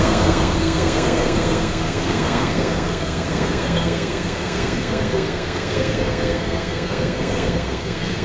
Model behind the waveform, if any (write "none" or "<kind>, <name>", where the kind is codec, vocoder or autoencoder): codec, SNAC